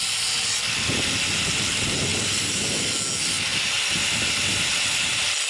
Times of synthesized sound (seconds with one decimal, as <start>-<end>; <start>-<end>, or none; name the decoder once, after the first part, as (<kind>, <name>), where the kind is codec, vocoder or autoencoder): none